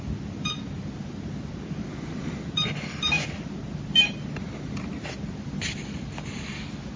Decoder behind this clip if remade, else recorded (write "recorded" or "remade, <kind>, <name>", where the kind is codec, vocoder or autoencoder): recorded